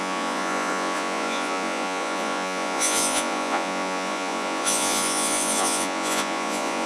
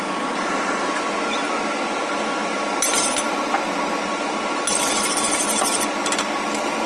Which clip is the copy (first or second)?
first